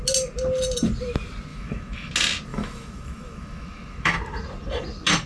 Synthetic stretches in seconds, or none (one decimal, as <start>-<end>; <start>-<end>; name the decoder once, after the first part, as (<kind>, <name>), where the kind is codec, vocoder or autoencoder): 1.5-2.1 (autoencoder, DAC-VAE); 2.5-4.2